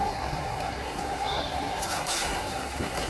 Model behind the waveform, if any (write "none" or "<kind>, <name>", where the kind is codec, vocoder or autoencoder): codec, SNAC